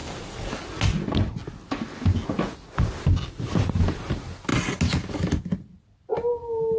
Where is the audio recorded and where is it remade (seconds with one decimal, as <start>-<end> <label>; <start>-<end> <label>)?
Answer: 0.0-6.8 recorded

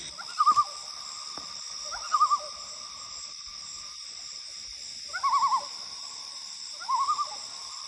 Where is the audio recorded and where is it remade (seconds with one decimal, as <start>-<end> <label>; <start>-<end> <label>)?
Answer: 0.0-7.9 recorded

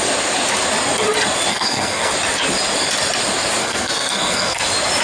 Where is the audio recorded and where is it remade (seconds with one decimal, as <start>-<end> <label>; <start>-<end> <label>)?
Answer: 0.0-1.5 recorded; 1.5-2.1 remade; 2.1-3.6 recorded; 3.6-4.6 remade; 4.6-5.0 recorded

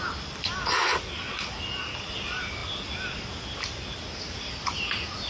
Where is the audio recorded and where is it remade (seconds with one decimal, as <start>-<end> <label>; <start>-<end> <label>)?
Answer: 0.0-5.3 recorded